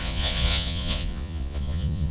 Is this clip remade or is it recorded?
remade